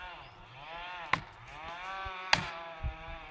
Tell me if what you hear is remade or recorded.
recorded